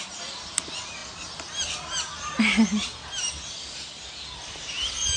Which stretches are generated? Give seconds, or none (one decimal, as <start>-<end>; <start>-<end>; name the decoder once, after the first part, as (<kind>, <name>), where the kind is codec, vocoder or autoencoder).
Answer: none